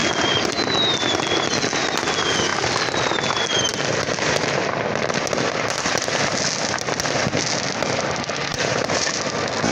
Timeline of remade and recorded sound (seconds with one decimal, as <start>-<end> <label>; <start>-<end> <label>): 0.0-8.5 recorded; 8.5-9.2 remade; 9.2-9.7 recorded

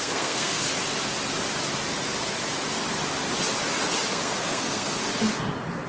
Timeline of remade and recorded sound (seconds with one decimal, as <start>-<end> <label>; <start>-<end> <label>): 0.0-0.6 remade; 0.6-4.1 recorded; 4.1-5.0 remade; 5.0-5.9 recorded

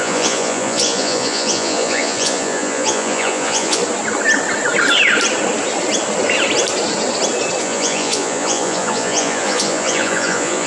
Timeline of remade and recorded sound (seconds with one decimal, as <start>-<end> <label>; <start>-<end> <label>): 0.0-3.8 remade; 3.8-7.6 recorded; 7.6-10.7 remade

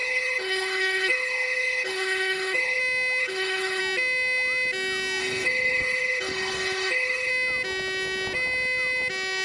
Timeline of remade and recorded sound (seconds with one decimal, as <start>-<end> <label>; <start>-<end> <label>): 0.0-2.8 remade; 2.8-3.2 recorded; 3.2-3.8 remade; 3.8-5.2 recorded; 5.2-7.3 remade; 7.3-9.4 recorded

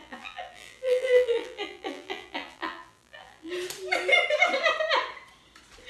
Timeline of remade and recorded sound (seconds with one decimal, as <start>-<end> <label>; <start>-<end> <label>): 0.0-3.5 remade; 3.5-5.9 recorded